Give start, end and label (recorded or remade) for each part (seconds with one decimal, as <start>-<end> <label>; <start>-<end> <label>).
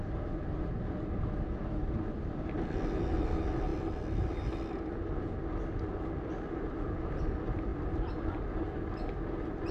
0.0-9.7 recorded